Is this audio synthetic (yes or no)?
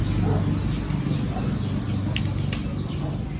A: no